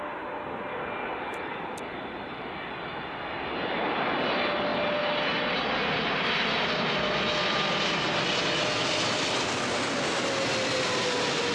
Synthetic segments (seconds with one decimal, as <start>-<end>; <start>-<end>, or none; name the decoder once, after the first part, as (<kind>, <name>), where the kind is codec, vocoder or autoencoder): none